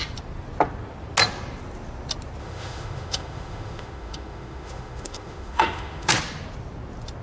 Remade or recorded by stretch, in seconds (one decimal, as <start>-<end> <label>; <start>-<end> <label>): 0.0-2.4 recorded; 2.4-6.1 remade; 6.1-7.2 recorded